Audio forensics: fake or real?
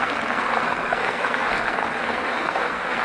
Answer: fake